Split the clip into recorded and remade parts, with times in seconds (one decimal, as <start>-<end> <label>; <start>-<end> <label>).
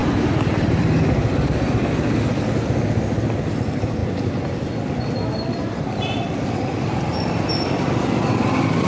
0.0-1.0 remade; 1.0-8.9 recorded